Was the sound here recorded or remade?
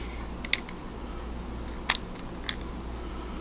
recorded